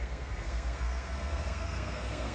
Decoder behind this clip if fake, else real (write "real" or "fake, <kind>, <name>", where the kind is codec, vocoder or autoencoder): fake, codec, SNAC